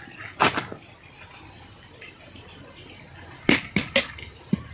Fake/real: real